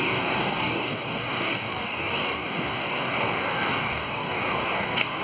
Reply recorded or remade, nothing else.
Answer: remade